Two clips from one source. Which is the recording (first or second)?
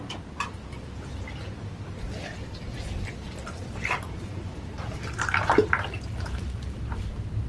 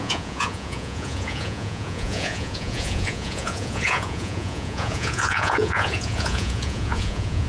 first